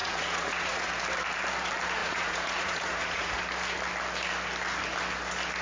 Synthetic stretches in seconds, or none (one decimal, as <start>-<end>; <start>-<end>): 0.0-0.9; 2.0-3.4